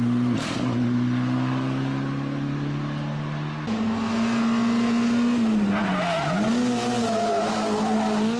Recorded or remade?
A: recorded